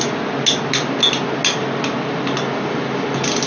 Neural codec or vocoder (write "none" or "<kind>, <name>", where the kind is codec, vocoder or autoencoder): none